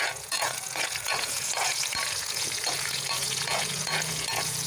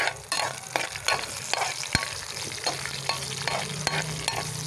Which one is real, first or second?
second